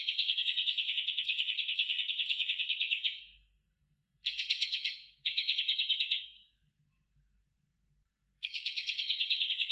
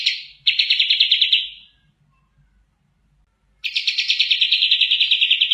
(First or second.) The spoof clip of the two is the first